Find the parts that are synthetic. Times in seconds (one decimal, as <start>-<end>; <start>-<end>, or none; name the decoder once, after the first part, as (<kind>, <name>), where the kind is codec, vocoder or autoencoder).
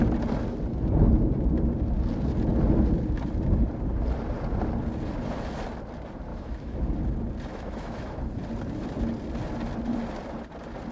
6.3-6.9 (autoencoder, DAC-VAE); 7.5-8.2